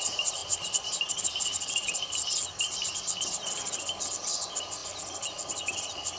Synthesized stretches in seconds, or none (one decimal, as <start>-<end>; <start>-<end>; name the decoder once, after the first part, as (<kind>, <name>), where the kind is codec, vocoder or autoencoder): none